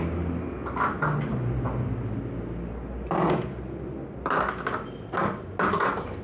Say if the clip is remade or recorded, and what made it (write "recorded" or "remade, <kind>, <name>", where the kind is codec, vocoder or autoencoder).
recorded